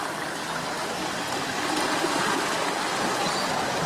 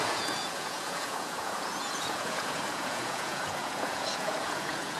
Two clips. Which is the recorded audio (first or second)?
first